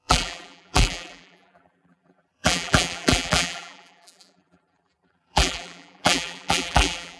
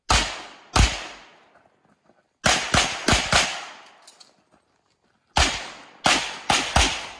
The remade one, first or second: first